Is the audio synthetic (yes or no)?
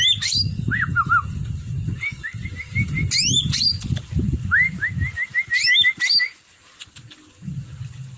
no